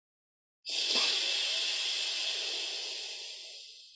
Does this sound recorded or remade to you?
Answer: recorded